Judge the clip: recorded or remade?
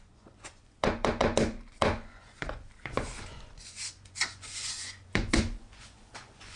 remade